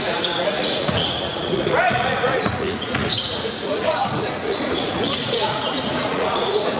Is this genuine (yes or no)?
no